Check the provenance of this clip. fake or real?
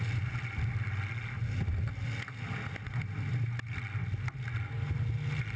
real